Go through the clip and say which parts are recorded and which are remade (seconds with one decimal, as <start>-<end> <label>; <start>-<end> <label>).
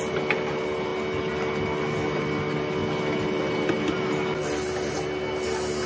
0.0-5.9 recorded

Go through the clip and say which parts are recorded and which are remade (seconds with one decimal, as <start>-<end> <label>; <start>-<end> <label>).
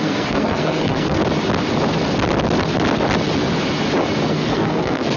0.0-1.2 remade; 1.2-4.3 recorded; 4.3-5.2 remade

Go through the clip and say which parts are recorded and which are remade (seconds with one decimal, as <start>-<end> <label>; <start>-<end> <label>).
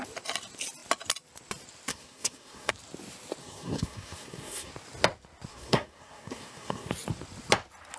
0.0-1.9 recorded; 1.9-2.7 remade; 2.7-3.4 recorded; 3.4-4.7 remade; 4.7-5.5 recorded; 5.5-6.9 remade; 6.9-8.0 recorded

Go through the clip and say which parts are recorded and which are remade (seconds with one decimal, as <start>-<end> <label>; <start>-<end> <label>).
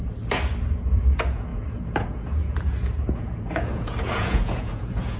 0.0-0.7 recorded; 0.7-5.2 remade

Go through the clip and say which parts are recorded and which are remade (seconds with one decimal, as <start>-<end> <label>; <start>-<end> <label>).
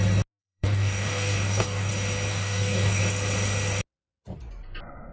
0.0-0.4 recorded; 0.4-1.9 remade; 1.9-2.3 recorded; 2.3-3.0 remade; 3.0-5.1 recorded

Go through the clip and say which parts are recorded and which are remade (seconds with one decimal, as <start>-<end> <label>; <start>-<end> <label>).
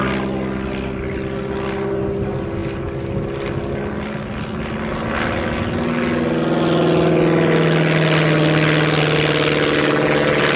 0.0-10.6 recorded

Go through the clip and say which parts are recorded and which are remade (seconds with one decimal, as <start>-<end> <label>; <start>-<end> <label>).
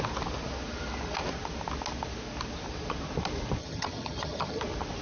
0.0-3.6 recorded; 3.6-4.6 remade; 4.6-5.0 recorded